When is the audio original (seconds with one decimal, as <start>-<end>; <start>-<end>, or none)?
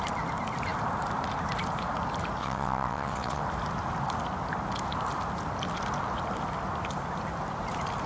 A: 0.0-2.4; 3.4-8.1